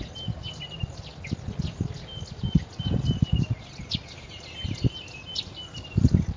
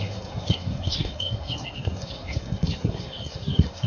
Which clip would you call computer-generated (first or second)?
second